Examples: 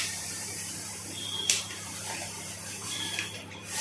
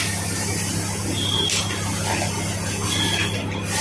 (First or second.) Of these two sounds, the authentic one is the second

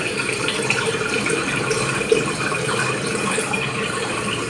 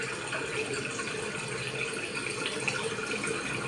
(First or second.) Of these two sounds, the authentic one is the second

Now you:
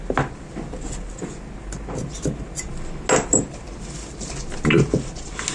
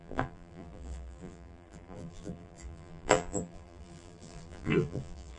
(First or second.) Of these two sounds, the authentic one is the first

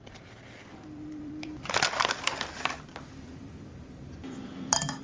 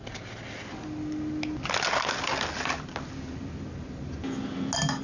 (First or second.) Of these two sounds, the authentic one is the second